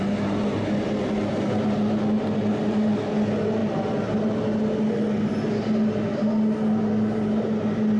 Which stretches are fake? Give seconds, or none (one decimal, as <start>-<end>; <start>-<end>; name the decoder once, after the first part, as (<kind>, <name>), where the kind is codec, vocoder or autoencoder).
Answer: none